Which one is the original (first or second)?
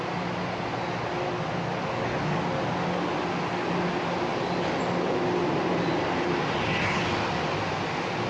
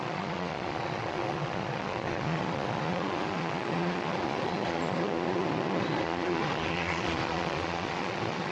first